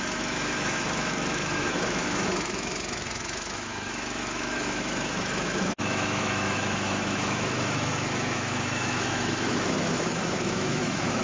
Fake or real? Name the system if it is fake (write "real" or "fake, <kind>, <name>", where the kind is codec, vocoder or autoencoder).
fake, autoencoder, DAC-VAE